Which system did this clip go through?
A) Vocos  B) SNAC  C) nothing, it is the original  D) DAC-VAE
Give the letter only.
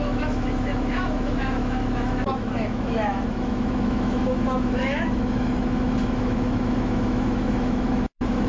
D